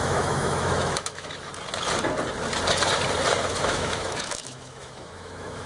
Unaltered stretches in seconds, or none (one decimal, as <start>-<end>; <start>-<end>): 1.5-3.5